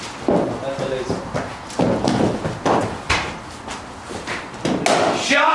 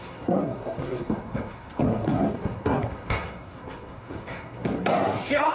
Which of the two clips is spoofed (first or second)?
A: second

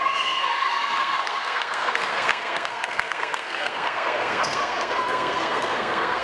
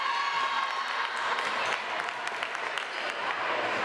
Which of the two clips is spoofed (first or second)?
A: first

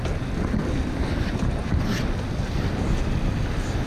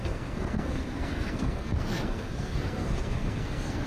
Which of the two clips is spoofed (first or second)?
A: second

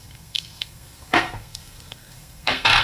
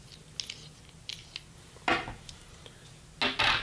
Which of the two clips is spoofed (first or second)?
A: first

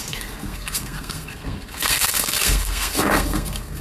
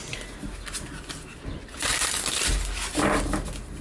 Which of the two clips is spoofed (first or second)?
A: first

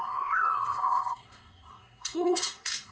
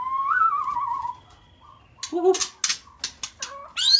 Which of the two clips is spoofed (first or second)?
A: first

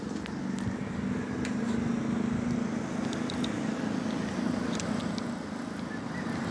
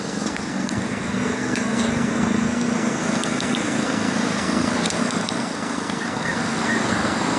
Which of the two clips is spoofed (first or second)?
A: second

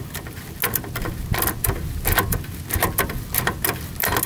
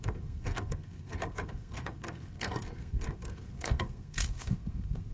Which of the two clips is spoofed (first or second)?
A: second